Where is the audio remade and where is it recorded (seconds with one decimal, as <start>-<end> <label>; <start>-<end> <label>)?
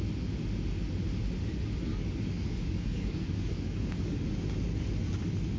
0.0-1.9 recorded; 1.9-4.3 remade; 4.3-5.6 recorded